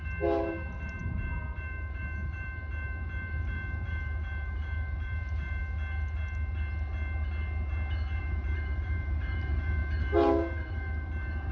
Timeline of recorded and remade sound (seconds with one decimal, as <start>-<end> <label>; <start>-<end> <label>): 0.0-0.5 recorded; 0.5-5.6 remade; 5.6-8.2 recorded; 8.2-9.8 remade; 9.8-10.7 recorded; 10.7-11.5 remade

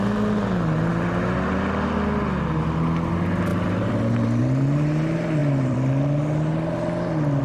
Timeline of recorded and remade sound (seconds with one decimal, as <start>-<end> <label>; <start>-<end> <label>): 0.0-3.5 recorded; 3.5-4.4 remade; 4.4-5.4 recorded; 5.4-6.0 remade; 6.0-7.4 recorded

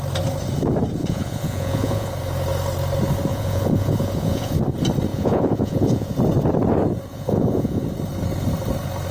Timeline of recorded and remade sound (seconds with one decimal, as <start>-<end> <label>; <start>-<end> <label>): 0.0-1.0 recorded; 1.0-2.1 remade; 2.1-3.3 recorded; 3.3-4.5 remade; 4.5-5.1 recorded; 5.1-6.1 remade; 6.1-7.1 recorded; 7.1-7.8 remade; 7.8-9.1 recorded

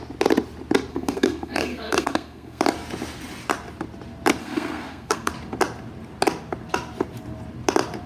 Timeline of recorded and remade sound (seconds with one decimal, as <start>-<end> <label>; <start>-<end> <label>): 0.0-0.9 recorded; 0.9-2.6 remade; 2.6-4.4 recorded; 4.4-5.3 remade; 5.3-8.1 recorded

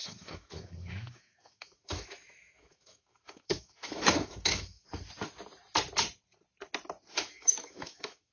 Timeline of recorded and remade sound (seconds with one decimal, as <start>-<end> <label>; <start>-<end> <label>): 0.0-5.0 remade; 5.0-7.1 recorded; 7.1-8.3 remade

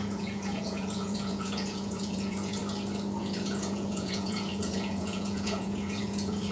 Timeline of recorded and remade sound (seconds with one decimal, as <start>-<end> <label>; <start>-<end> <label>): 0.0-2.6 remade; 2.6-3.2 recorded; 3.2-6.5 remade